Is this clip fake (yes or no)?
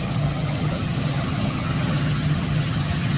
yes